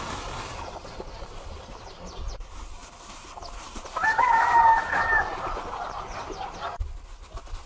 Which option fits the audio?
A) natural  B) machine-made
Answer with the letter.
A